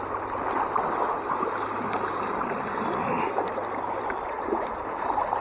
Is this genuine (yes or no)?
yes